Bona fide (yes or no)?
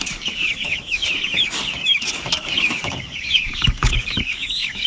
no